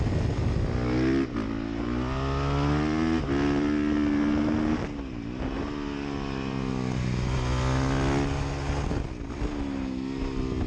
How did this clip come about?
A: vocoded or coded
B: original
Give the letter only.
B